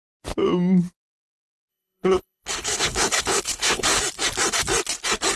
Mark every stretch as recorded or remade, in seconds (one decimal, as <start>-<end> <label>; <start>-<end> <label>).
0.0-1.7 recorded; 1.7-4.0 remade; 4.0-5.4 recorded